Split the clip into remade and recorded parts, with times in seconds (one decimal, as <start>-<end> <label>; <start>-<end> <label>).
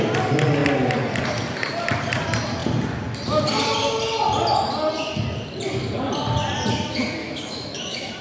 0.0-7.2 recorded; 7.2-8.2 remade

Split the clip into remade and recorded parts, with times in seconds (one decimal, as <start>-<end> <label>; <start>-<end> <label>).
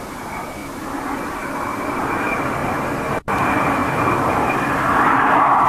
0.0-5.7 recorded